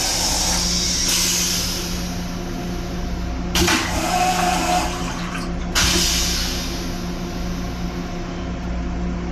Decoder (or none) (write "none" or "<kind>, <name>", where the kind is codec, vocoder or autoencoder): none